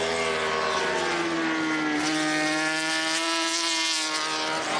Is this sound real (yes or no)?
yes